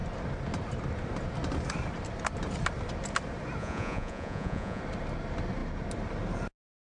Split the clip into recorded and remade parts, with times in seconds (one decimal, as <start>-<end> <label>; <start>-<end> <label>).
0.0-3.6 recorded; 3.6-4.8 remade; 4.8-6.9 recorded